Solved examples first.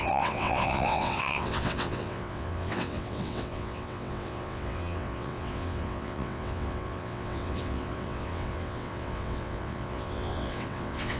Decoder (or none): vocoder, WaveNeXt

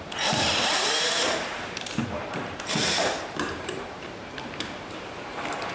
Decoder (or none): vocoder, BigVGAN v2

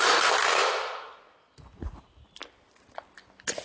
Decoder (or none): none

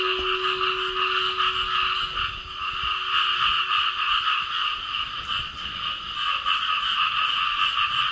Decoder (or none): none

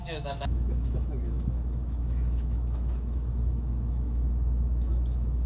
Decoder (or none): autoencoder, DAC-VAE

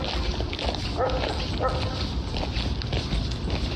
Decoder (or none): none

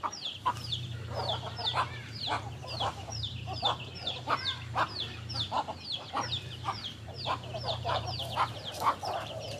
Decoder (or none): vocoder, BigVGAN v2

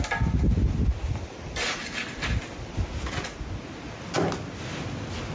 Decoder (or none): none